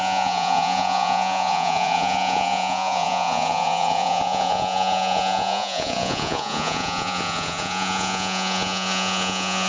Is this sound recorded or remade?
remade